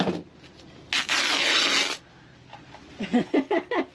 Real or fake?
real